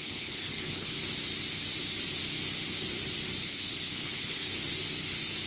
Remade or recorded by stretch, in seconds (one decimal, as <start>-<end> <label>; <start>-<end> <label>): 0.0-1.0 remade; 1.0-3.4 recorded; 3.4-4.4 remade; 4.4-5.5 recorded